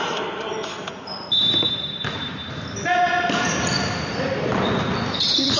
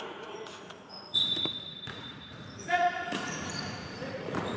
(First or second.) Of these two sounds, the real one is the first